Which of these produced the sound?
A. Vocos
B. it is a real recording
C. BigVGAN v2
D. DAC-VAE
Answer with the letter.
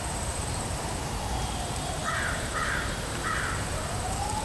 C